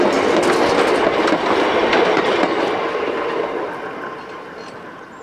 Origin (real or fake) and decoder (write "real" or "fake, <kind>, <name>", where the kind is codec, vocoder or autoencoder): real